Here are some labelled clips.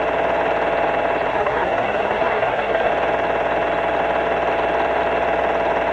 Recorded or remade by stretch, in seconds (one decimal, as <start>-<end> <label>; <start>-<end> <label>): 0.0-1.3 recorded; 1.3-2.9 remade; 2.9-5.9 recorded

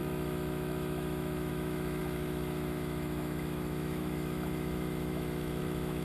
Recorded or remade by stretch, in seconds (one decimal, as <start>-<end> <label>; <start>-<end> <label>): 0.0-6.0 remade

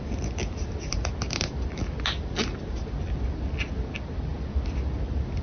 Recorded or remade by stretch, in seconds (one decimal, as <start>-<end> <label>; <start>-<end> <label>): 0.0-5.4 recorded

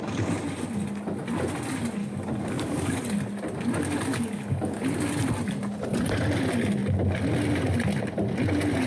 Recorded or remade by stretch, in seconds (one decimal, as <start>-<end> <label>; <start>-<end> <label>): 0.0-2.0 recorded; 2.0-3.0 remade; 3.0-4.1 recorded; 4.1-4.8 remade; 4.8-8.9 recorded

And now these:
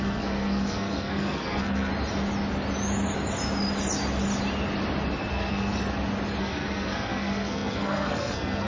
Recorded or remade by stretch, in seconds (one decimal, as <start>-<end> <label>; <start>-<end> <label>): 0.0-1.9 remade; 1.9-5.3 recorded; 5.3-5.7 remade; 5.7-6.4 recorded; 6.4-8.7 remade

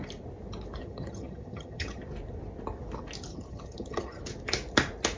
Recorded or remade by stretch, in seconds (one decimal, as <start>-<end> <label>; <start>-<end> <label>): 0.0-0.8 recorded; 0.8-2.0 remade; 2.0-3.3 recorded; 3.3-4.2 remade; 4.2-5.2 recorded

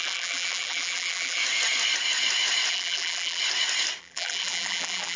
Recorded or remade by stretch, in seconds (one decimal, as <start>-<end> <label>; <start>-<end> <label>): 0.0-1.4 remade; 1.4-2.7 recorded; 2.7-3.4 remade; 3.4-4.0 recorded; 4.0-5.2 remade

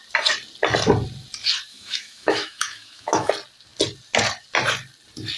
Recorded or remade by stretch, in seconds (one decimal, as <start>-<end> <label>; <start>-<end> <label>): 0.0-1.7 recorded; 1.7-3.3 remade; 3.3-5.4 recorded